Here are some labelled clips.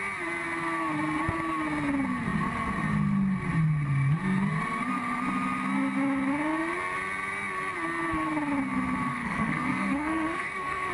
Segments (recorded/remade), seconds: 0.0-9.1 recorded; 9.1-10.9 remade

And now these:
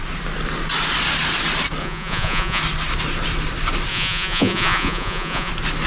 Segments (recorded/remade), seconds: 0.0-1.8 recorded; 1.8-2.6 remade; 2.6-3.9 recorded; 3.9-5.5 remade; 5.5-5.9 recorded

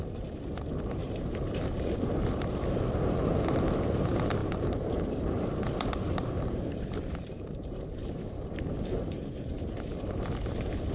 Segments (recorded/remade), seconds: 0.0-1.0 recorded; 1.0-2.0 remade; 2.0-4.4 recorded; 4.4-9.4 remade; 9.4-10.9 recorded

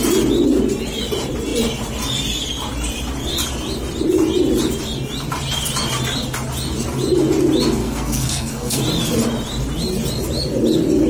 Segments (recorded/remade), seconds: 0.0-7.8 recorded; 7.8-8.8 remade; 8.8-11.1 recorded

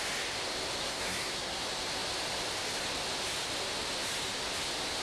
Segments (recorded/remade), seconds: 0.0-0.8 recorded; 0.8-1.6 remade; 1.6-5.0 recorded

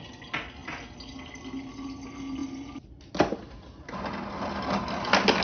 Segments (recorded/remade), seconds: 0.0-5.4 recorded

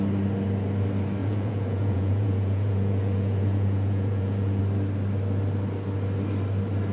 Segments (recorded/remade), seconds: 0.0-1.2 recorded; 1.2-4.6 remade; 4.6-6.9 recorded

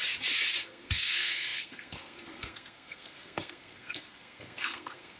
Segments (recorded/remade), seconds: 0.0-0.6 recorded; 0.6-5.2 remade